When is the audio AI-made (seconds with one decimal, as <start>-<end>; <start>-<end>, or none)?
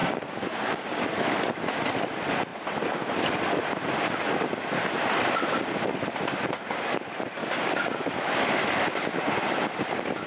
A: 0.0-1.0; 7.4-7.9